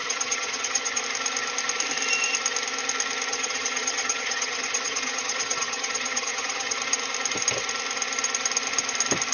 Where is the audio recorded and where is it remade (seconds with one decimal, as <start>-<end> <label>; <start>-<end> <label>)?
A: 0.0-1.0 remade; 1.0-3.3 recorded; 3.3-6.8 remade; 6.8-9.3 recorded